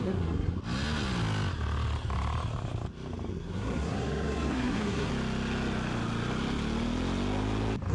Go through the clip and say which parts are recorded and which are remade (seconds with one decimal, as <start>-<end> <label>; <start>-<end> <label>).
0.0-0.6 remade; 0.6-3.3 recorded; 3.3-5.1 remade; 5.1-7.9 recorded